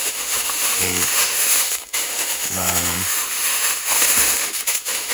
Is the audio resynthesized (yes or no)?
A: yes